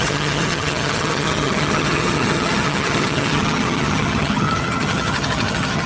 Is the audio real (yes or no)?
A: no